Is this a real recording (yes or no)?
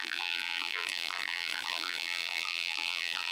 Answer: no